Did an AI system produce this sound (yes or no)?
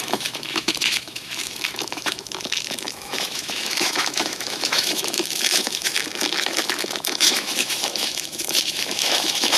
yes